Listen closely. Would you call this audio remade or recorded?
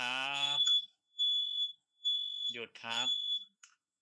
remade